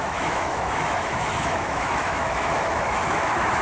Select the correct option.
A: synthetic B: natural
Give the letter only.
A